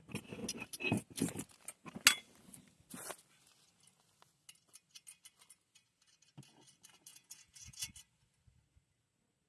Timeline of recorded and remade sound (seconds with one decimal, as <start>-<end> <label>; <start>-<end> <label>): 0.0-7.1 recorded; 7.1-7.9 remade; 7.9-9.5 recorded